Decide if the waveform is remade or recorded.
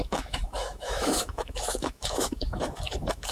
remade